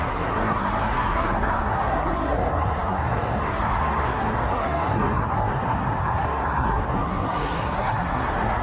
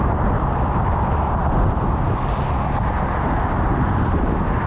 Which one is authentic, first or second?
second